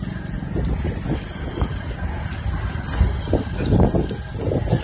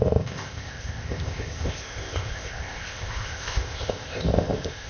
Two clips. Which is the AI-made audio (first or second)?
second